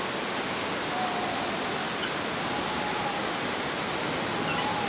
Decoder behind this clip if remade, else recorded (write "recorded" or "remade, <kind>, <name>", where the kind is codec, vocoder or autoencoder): recorded